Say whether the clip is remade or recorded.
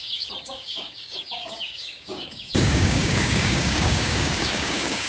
remade